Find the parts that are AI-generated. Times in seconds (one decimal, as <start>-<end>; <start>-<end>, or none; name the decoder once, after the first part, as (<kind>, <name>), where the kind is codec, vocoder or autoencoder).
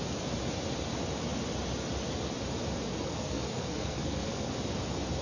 2.9-4.5 (codec, SNAC)